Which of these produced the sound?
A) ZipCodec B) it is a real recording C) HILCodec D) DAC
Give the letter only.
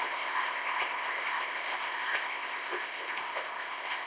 A